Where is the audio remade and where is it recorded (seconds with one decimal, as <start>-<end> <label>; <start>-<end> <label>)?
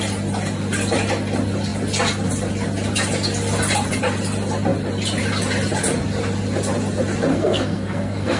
0.0-7.3 recorded; 7.3-8.4 remade